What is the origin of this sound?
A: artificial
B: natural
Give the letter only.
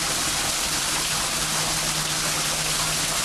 B